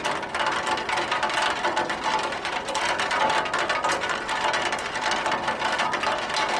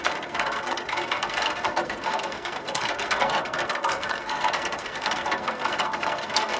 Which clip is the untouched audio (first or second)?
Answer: first